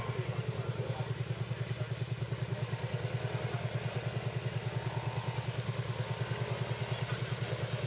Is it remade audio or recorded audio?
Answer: recorded